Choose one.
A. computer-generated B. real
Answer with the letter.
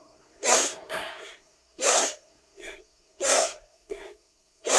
A